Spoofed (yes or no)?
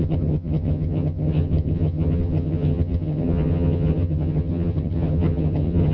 yes